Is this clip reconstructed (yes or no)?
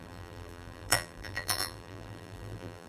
yes